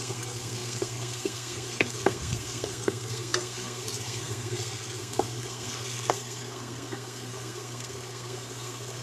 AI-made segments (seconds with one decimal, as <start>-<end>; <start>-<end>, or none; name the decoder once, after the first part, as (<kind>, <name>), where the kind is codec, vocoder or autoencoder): 0.0-9.0 (codec, SNAC)